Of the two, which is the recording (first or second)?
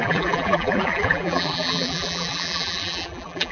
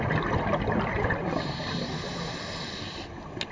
second